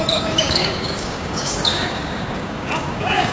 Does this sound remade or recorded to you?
remade